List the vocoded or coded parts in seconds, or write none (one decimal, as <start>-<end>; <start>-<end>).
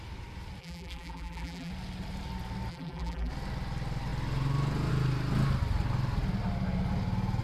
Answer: 0.6-1.7; 2.7-3.3